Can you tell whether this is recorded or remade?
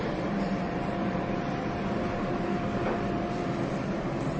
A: remade